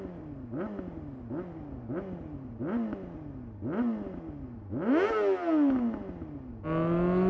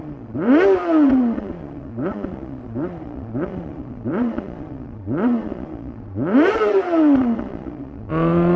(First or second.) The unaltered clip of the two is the first